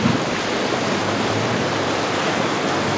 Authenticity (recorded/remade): remade